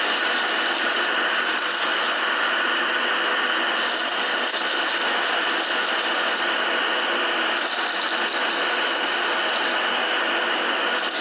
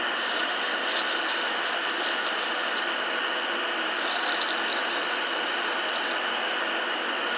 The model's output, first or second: second